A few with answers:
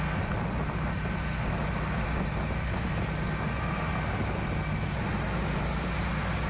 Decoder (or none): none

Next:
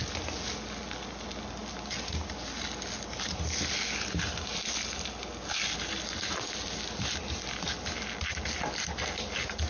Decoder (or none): none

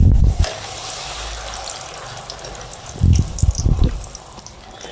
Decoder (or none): none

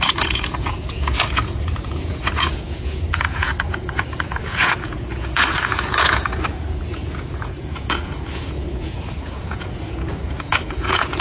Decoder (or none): vocoder, Vocos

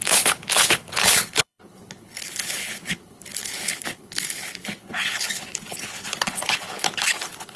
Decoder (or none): codec, HILCodec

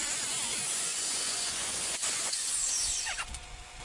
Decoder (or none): vocoder, Vocos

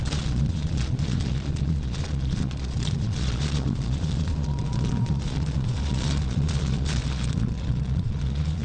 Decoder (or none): vocoder, Vocos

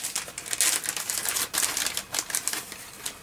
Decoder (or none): none